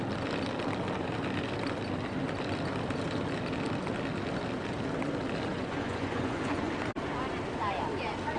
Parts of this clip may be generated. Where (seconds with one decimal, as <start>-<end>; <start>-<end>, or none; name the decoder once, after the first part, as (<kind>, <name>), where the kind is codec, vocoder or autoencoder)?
5.5-6.7 (vocoder, Vocos)